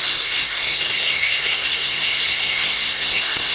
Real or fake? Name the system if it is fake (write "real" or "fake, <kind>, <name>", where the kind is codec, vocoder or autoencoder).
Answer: fake, codec, SNAC